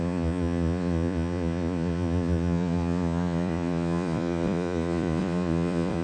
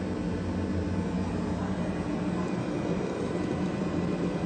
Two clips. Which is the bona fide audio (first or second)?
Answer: second